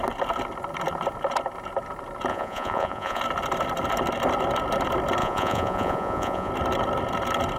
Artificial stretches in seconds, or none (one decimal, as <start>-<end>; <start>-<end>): 2.3-3.2; 5.2-6.5